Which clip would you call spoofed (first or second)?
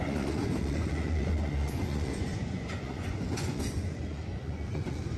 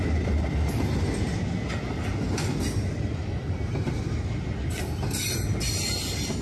first